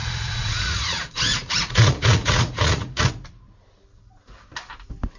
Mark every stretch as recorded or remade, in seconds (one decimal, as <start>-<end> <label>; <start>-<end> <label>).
0.0-3.1 remade; 3.1-5.2 recorded